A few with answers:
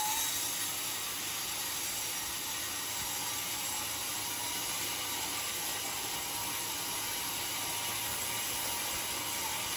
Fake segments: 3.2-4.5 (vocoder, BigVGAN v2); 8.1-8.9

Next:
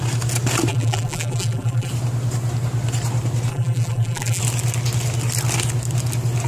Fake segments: 0.7-1.9 (vocoder, BigVGAN v2); 3.5-4.4

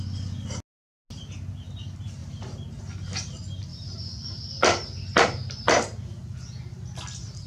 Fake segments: 1.1-1.8 (vocoder, BigVGAN v2); 2.2-2.8; 3.7-6.6